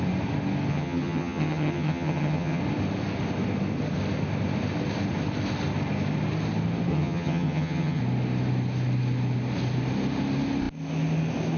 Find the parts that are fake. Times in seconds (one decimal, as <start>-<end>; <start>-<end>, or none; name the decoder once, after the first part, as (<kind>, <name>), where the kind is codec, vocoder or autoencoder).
0.7-2.6 (vocoder, HiFi-GAN); 6.9-8.0